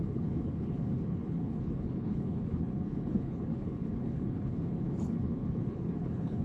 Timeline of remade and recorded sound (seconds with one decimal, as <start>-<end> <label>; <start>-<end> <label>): 0.0-6.4 remade